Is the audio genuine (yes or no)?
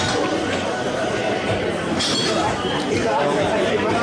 no